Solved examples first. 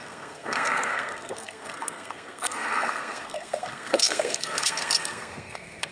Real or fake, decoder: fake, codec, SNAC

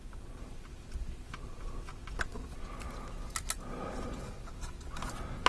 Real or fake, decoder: real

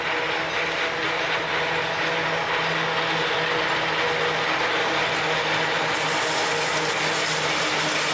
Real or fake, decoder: real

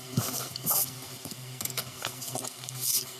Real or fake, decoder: fake, codec, SNAC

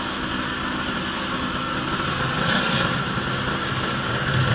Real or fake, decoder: real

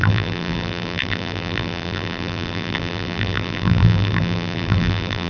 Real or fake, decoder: fake, vocoder, BigVGAN v2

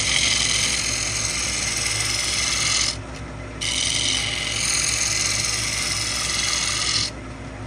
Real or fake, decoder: real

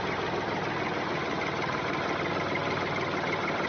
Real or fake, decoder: real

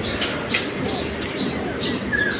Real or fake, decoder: real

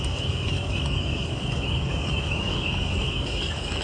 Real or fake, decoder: fake, codec, DAC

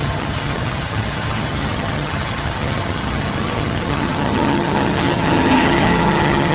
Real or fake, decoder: fake, vocoder, HiFi-GAN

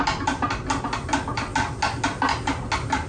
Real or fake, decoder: real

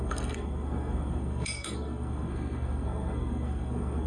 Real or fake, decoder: fake, codec, SNAC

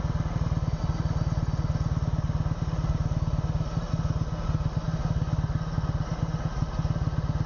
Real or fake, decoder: real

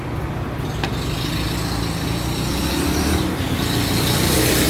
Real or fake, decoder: real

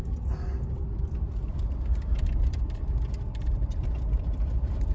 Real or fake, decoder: real